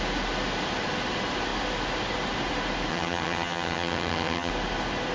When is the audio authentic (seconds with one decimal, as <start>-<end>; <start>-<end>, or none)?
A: 0.0-2.9; 4.5-5.1